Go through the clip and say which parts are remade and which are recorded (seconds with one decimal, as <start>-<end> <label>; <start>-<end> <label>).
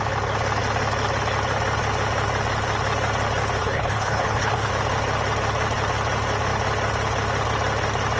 0.0-3.6 recorded; 3.6-4.7 remade; 4.7-8.2 recorded